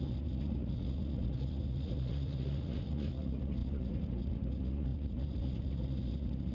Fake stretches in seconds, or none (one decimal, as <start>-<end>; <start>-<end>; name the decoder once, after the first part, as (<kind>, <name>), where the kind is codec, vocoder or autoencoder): 0.0-6.5 (vocoder, Vocos)